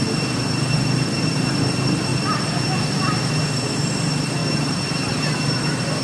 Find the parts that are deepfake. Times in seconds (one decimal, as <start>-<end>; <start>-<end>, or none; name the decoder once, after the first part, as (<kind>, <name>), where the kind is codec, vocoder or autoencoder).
none